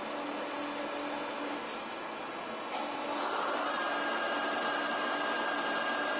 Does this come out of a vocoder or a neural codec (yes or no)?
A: no